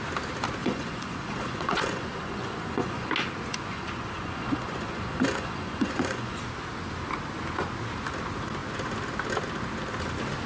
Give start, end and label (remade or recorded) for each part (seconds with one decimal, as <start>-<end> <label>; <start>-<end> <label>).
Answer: 0.0-0.6 recorded; 0.6-3.1 remade; 3.1-3.5 recorded; 3.5-6.4 remade; 6.4-10.5 recorded